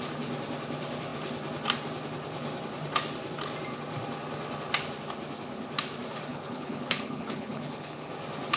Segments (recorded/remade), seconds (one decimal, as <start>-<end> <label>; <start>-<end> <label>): 0.0-6.3 recorded; 6.3-8.1 remade; 8.1-8.6 recorded